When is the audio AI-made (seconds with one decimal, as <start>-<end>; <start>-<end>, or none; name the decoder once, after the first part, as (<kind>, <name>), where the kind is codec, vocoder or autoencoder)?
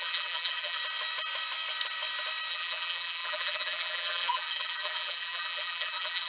0.0-0.8 (vocoder, BigVGAN v2); 2.5-6.3